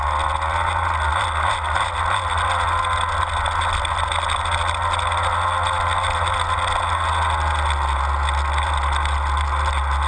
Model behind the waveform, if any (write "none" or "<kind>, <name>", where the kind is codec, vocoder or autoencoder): none